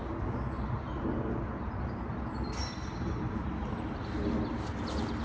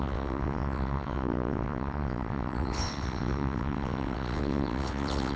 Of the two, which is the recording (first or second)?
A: first